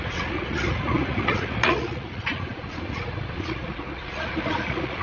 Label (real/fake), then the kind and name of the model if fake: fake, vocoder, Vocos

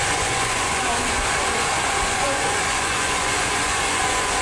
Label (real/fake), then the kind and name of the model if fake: fake, vocoder, Vocos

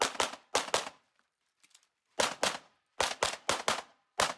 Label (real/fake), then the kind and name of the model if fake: real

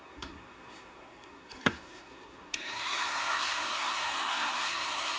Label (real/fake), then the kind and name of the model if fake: fake, codec, SNAC